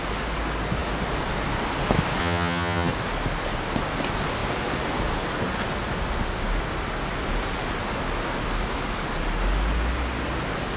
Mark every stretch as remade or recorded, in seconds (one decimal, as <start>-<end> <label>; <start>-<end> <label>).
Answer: 0.0-2.2 recorded; 2.2-2.9 remade; 2.9-10.8 recorded